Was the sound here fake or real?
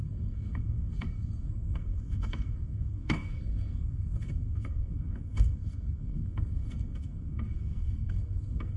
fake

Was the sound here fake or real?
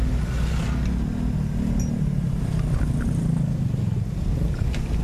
real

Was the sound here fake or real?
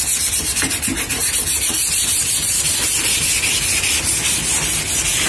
real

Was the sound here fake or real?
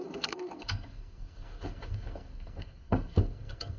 fake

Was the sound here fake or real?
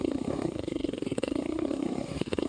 fake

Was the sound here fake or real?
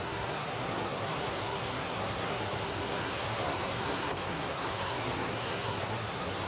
fake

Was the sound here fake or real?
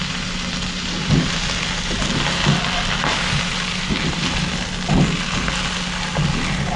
real